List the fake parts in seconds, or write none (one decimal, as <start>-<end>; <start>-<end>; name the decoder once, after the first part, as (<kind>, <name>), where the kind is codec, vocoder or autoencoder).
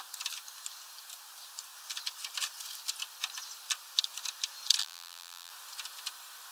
4.8-5.5 (vocoder, BigVGAN v2)